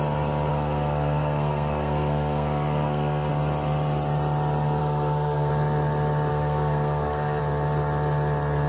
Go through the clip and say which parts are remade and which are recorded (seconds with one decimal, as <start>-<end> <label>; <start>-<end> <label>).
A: 0.0-0.5 recorded; 0.5-3.3 remade; 3.3-4.8 recorded; 4.8-5.5 remade; 5.5-6.3 recorded; 6.3-7.4 remade; 7.4-8.7 recorded